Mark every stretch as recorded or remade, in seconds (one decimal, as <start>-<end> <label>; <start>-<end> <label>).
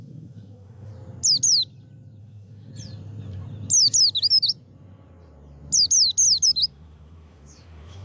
0.0-0.9 remade; 0.9-2.2 recorded; 2.2-2.7 remade; 2.7-6.7 recorded; 6.7-8.0 remade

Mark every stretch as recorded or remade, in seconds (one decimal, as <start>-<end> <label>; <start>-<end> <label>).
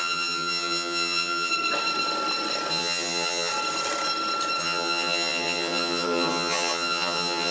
0.0-1.5 remade; 1.5-2.7 recorded; 2.7-3.5 remade; 3.5-4.6 recorded; 4.6-7.5 remade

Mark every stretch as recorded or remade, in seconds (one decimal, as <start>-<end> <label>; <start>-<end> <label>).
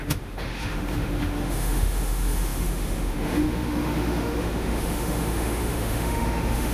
0.0-6.7 remade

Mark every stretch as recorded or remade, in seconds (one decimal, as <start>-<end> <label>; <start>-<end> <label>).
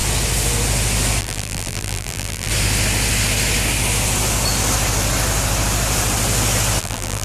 0.0-1.2 recorded; 1.2-2.5 remade; 2.5-6.8 recorded; 6.8-7.2 remade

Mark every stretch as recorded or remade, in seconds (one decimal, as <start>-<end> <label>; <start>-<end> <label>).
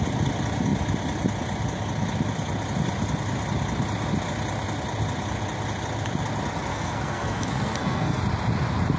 0.0-6.7 recorded; 6.7-8.2 remade; 8.2-9.0 recorded